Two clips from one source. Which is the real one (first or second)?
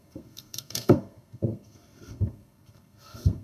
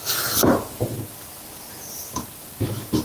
second